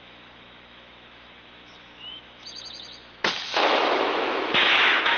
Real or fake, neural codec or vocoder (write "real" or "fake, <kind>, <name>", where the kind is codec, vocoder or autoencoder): fake, autoencoder, DAC-VAE